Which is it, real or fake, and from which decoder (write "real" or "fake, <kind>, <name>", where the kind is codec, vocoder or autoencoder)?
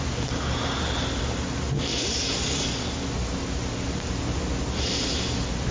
real